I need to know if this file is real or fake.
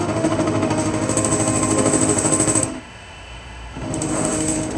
fake